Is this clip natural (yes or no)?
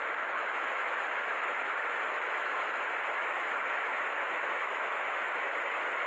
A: no